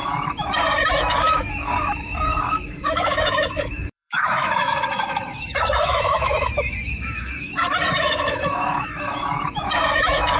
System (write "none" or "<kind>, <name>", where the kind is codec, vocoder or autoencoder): autoencoder, DAC-VAE